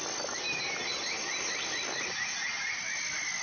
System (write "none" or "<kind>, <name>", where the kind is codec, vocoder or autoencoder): none